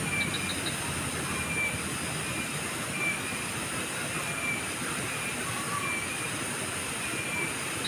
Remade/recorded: recorded